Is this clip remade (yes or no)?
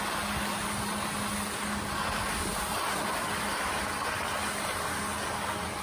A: no